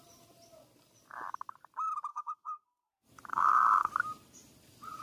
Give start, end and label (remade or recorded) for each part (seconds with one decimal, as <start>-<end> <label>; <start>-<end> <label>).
0.0-2.1 recorded; 2.1-2.9 remade; 2.9-3.3 recorded; 3.3-3.9 remade; 3.9-5.0 recorded